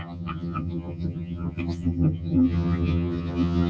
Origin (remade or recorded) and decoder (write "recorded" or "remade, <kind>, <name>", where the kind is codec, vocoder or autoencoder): remade, vocoder, HiFi-GAN